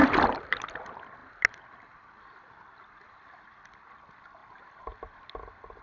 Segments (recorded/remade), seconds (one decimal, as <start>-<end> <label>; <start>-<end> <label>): 0.0-5.8 recorded